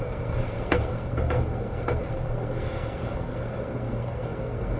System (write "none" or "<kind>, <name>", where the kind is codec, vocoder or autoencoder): codec, SNAC